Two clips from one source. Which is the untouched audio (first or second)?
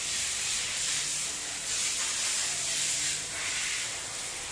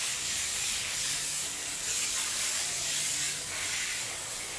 first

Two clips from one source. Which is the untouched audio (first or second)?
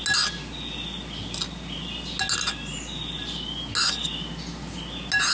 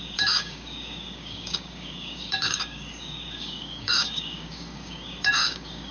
first